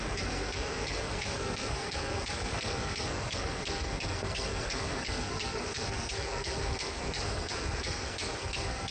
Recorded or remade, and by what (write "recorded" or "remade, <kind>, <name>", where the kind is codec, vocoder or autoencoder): remade, codec, SNAC